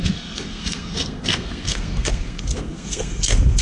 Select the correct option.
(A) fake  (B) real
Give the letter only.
A